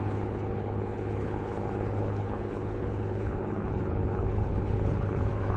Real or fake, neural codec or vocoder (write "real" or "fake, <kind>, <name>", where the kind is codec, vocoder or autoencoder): fake, codec, HILCodec